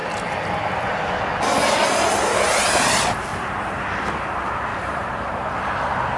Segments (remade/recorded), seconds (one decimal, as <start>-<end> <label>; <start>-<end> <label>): 0.0-3.3 recorded; 3.3-4.2 remade; 4.2-4.7 recorded; 4.7-5.6 remade; 5.6-6.2 recorded

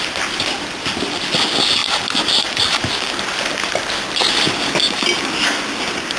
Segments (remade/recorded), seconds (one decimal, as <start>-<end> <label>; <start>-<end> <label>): 0.0-1.8 recorded; 1.8-2.9 remade; 2.9-6.2 recorded

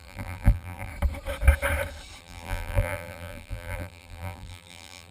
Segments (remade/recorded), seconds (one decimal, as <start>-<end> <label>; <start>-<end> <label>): 0.0-0.9 remade; 0.9-2.2 recorded; 2.2-5.1 remade

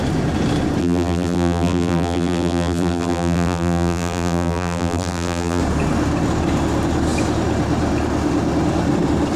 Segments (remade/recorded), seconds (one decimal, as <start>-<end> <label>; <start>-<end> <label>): 0.0-0.8 recorded; 0.8-5.6 remade; 5.6-9.4 recorded

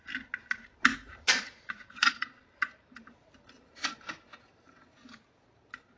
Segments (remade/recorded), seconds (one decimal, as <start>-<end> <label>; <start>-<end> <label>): 0.0-0.9 recorded; 0.9-4.5 remade; 4.5-6.0 recorded

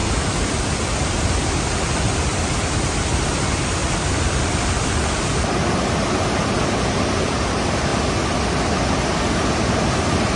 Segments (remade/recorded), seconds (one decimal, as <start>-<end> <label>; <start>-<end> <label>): 0.0-1.6 remade; 1.6-3.8 recorded; 3.8-5.6 remade; 5.6-10.4 recorded